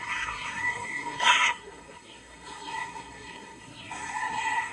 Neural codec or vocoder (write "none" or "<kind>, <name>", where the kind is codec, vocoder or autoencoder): codec, SNAC